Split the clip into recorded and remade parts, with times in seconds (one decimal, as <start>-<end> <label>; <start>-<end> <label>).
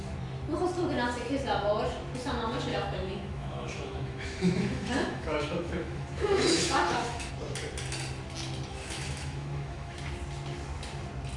0.0-2.7 recorded; 2.7-7.3 remade; 7.3-8.7 recorded; 8.7-10.0 remade; 10.0-11.4 recorded